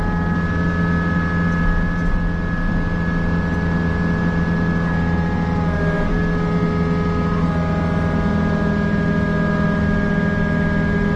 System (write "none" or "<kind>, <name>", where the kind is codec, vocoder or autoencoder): none